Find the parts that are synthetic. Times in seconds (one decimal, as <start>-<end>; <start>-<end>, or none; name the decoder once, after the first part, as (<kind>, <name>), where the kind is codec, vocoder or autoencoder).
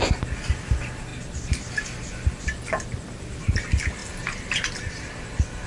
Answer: none